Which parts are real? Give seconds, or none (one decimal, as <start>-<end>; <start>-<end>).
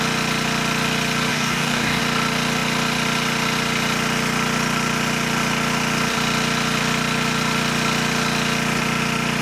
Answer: 0.0-1.3; 2.0-9.4